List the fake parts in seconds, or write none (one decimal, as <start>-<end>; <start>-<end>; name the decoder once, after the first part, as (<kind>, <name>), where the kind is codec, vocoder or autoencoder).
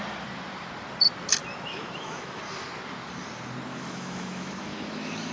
1.7-2.4 (autoencoder, DAC-VAE); 3.7-5.3